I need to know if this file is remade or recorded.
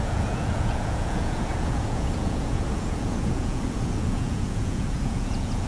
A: remade